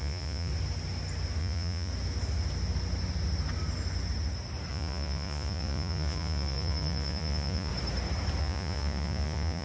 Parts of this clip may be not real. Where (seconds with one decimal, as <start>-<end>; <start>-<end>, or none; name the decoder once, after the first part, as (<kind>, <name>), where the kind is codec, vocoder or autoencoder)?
0.0-0.5 (vocoder, Vocos); 1.4-1.9; 4.7-7.7; 8.4-9.6